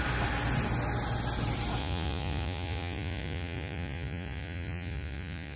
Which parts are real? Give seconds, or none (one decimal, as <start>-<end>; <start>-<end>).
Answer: 0.0-1.8